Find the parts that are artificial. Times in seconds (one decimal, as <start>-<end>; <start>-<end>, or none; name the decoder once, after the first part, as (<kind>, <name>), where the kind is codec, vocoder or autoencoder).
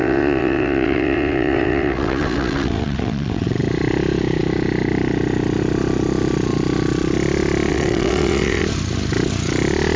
0.0-3.6 (vocoder, WaveNeXt); 7.7-8.6